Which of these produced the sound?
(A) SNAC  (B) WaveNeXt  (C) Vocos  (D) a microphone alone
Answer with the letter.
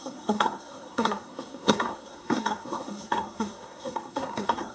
A